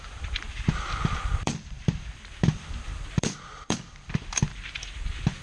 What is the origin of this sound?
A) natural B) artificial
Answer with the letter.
B